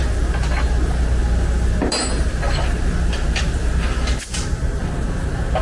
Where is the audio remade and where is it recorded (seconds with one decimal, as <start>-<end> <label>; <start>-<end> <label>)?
0.0-5.6 recorded